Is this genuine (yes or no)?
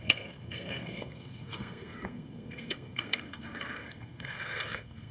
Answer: no